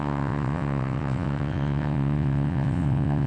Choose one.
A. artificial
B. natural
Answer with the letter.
A